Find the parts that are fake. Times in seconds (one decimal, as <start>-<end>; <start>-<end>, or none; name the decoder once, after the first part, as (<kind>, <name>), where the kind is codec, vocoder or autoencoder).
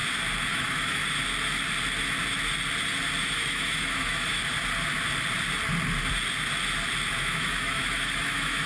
0.5-1.0 (autoencoder, DAC-VAE); 3.2-4.4; 7.1-8.7